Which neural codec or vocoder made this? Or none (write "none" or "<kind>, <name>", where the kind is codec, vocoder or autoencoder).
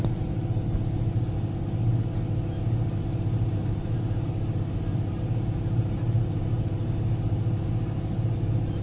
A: none